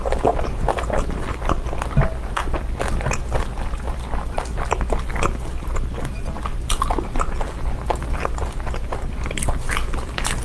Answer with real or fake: real